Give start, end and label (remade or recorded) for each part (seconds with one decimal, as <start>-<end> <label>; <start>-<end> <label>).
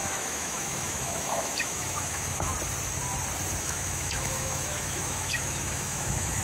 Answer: 0.0-2.5 remade; 2.5-3.6 recorded; 3.6-6.4 remade